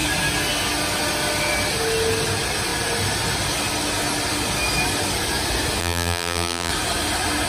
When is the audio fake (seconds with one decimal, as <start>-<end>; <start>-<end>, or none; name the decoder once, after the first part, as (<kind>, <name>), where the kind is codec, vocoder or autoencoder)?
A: 5.8-6.7 (vocoder, BigVGAN v2)

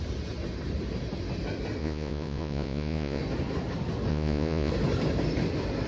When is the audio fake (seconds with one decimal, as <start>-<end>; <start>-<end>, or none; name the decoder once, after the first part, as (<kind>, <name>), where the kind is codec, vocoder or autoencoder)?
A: 1.8-3.2 (vocoder, Vocos); 4.1-4.7

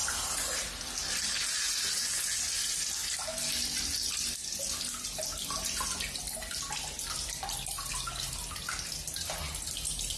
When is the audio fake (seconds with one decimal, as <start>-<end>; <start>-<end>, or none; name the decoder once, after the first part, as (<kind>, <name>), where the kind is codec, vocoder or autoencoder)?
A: 0.0-1.6 (vocoder, BigVGAN v2)

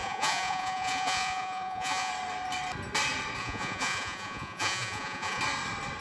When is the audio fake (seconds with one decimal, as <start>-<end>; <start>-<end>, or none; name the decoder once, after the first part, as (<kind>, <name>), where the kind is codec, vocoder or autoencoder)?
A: 0.0-2.1 (vocoder, Vocos); 3.4-5.4

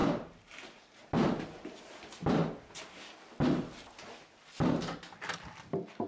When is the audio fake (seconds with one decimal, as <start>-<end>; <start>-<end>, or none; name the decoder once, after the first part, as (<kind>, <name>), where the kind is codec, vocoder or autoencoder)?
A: 0.0-0.8 (vocoder, BigVGAN v2)